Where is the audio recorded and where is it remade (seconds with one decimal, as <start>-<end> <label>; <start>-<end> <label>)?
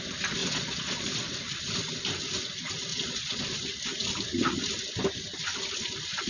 0.0-0.4 recorded; 0.4-1.2 remade; 1.2-2.9 recorded; 2.9-3.4 remade; 3.4-6.3 recorded